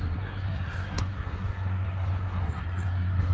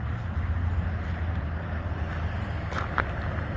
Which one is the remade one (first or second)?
first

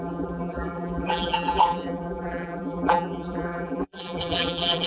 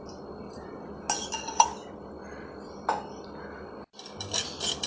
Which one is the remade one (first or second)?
first